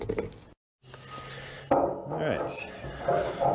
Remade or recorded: recorded